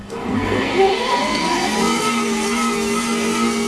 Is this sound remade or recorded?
remade